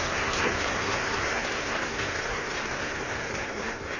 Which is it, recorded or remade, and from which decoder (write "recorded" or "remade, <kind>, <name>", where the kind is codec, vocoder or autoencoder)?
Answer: remade, codec, SNAC